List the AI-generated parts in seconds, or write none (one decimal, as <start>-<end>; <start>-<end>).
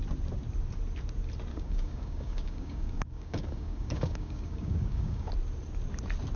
1.5-5.3